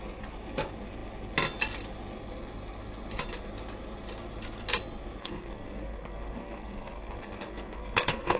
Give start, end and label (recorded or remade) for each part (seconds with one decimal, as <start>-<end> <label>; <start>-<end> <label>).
0.0-5.2 recorded; 5.2-8.4 remade

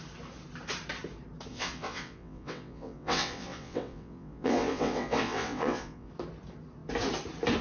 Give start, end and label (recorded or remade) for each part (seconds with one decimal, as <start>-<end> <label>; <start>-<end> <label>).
0.0-1.5 recorded; 1.5-6.1 remade; 6.1-7.6 recorded

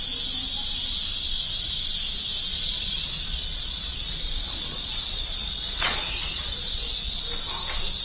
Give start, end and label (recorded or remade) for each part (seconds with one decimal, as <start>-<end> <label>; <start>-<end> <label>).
0.0-2.5 recorded; 2.5-7.2 remade; 7.2-8.0 recorded

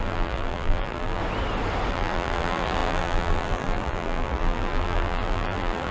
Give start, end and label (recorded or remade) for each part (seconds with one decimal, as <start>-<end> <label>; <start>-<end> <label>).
0.0-1.2 remade; 1.2-1.9 recorded; 1.9-5.9 remade

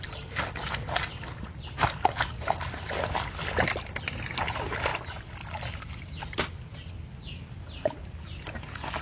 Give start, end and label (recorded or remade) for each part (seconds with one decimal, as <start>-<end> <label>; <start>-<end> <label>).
0.0-9.0 recorded

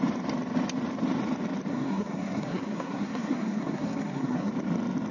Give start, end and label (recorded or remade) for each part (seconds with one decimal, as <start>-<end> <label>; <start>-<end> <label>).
0.0-1.7 recorded; 1.7-4.5 remade; 4.5-5.1 recorded

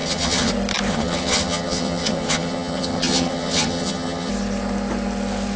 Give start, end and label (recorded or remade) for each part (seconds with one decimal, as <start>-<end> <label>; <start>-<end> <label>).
0.0-0.5 remade; 0.5-0.9 recorded; 0.9-4.3 remade; 4.3-5.6 recorded